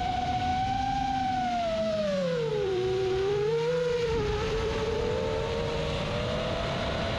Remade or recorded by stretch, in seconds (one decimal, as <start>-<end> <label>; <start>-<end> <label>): 0.0-0.5 remade; 0.5-2.5 recorded; 2.5-7.2 remade